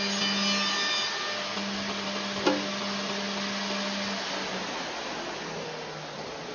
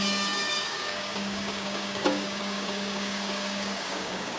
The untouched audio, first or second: first